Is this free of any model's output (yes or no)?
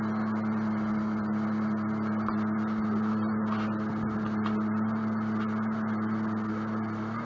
yes